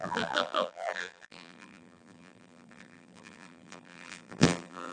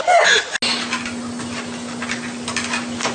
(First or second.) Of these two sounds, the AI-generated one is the first